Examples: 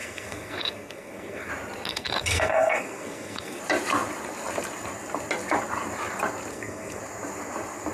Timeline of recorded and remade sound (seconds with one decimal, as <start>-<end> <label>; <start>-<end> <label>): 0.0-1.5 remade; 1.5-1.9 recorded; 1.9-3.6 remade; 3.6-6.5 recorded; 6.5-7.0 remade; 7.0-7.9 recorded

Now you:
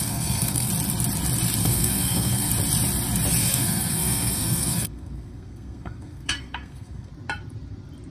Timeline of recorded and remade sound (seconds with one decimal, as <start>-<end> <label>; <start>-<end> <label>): 0.0-0.7 remade; 0.7-1.6 recorded; 1.6-2.5 remade; 2.5-3.4 recorded; 3.4-7.1 remade; 7.1-8.1 recorded

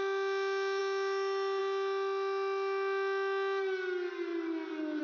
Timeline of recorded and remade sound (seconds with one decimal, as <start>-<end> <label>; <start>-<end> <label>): 0.0-5.0 recorded